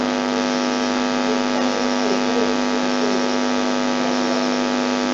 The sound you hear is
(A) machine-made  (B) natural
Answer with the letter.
B